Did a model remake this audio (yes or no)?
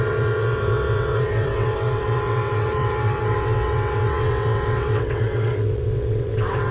yes